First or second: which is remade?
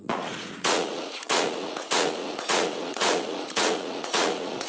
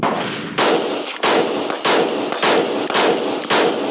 first